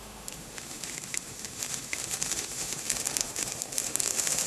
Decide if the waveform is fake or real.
fake